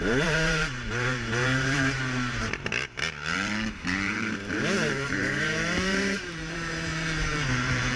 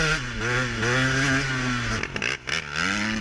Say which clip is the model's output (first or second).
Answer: first